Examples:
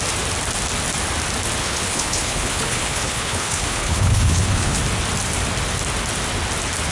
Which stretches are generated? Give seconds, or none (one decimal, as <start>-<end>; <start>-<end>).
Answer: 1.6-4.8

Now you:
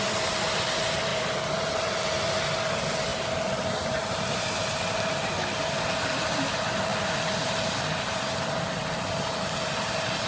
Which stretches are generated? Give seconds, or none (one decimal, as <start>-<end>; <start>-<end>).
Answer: none

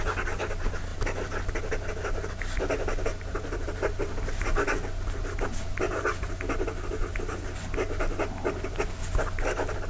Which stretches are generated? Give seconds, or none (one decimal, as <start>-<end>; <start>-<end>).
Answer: none